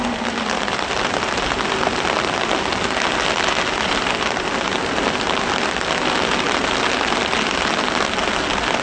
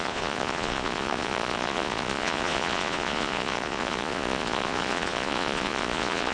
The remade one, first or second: second